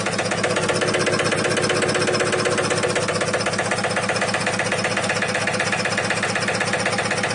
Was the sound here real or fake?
real